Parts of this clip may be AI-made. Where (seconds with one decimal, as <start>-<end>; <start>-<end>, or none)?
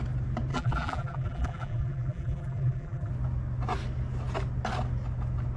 0.5-3.1